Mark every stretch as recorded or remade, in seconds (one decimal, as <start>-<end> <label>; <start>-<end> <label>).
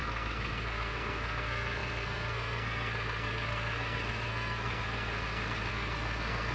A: 0.0-6.5 remade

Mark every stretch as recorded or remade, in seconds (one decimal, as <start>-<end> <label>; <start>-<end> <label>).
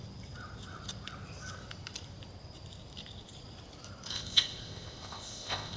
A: 0.0-4.1 recorded; 4.1-5.8 remade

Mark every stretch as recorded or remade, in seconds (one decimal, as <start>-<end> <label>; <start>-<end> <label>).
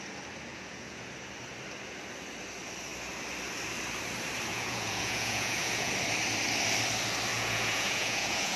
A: 0.0-0.5 recorded; 0.5-1.1 remade; 1.1-4.5 recorded; 4.5-5.9 remade; 5.9-7.3 recorded; 7.3-8.6 remade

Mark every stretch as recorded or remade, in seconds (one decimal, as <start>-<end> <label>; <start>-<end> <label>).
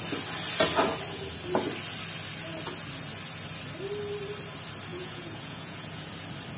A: 0.0-4.9 recorded; 4.9-6.1 remade; 6.1-6.6 recorded